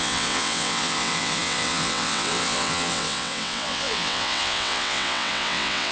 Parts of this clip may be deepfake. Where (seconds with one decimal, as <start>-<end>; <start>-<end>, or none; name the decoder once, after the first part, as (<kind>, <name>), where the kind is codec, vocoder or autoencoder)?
0.0-5.9 (vocoder, WaveNeXt)